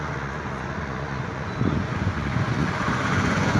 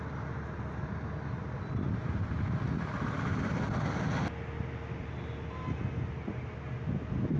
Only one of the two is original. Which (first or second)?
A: second